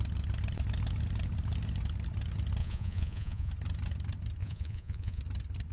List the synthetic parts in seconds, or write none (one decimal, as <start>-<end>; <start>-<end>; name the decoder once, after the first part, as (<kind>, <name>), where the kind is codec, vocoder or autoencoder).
2.6-3.5 (vocoder, Vocos); 4.4-5.2